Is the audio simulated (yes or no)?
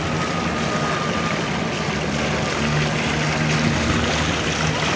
no